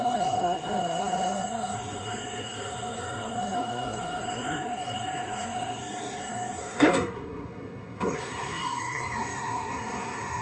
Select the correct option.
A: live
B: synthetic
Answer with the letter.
B